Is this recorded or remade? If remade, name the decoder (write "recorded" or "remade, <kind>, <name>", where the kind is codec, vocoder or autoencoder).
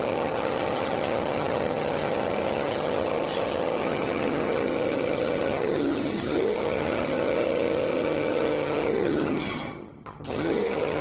remade, vocoder, HiFi-GAN